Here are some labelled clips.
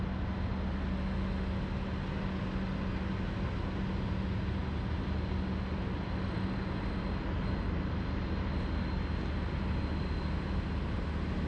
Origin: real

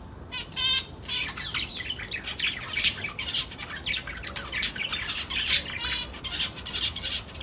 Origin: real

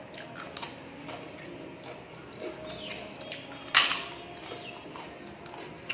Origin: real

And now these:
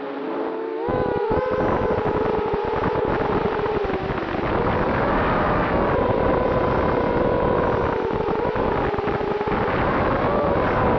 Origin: real